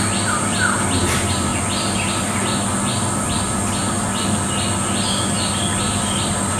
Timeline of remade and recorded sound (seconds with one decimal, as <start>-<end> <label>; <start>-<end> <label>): 0.0-6.6 recorded